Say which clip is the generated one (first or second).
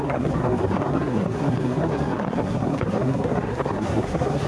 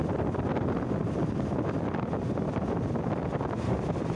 first